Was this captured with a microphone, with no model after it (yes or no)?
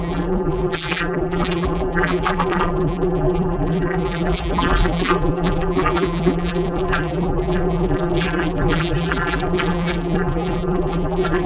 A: no